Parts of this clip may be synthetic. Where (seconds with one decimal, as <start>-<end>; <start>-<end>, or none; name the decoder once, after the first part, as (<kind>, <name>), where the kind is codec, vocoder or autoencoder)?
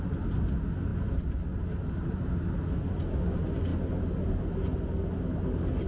none